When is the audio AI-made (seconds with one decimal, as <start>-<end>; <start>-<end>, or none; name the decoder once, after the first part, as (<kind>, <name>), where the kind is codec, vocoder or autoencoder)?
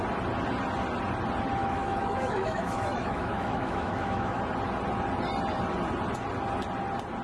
1.6-4.4 (autoencoder, DAC-VAE)